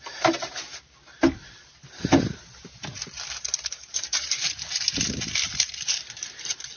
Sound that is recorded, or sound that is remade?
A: remade